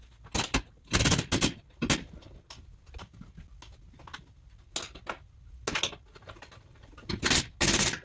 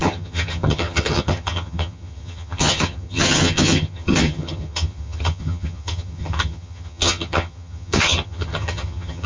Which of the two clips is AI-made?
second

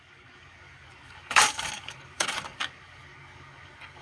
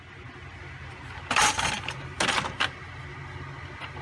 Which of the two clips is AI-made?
first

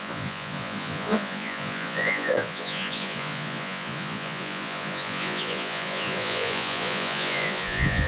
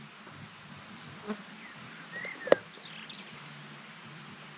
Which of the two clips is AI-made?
first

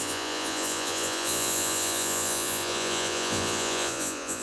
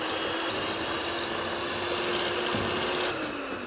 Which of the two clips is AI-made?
first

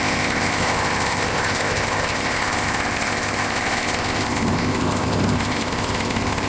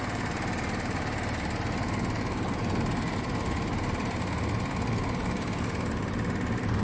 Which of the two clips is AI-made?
first